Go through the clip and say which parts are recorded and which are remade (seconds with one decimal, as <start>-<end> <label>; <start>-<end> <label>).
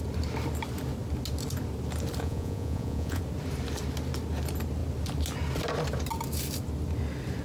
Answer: 0.0-2.2 recorded; 2.2-3.2 remade; 3.2-7.4 recorded